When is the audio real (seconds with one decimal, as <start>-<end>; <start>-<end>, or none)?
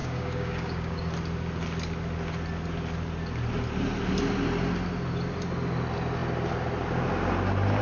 1.1-7.8